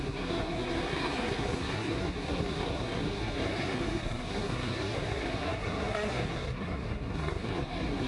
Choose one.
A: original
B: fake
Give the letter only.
B